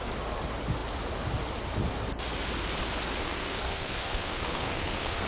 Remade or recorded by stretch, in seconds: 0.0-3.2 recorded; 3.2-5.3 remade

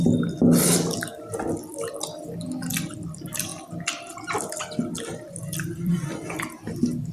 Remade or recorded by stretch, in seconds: 0.0-3.5 remade; 3.5-5.4 recorded; 5.4-7.1 remade

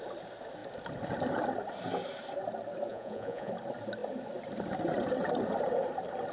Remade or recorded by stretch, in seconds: 0.0-2.9 recorded; 2.9-3.5 remade; 3.5-6.3 recorded

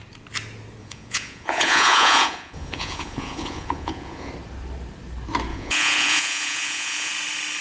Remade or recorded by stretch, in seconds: 0.0-0.8 recorded; 0.8-4.3 remade; 4.3-5.5 recorded; 5.5-7.1 remade; 7.1-7.6 recorded